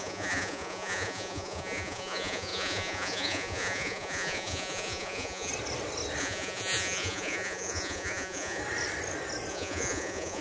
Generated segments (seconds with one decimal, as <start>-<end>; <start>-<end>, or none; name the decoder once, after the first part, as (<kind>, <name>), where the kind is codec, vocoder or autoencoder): 0.0-5.5 (vocoder, Vocos); 6.2-8.6; 9.5-10.4